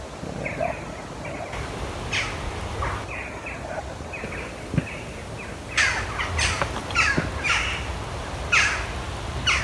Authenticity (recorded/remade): recorded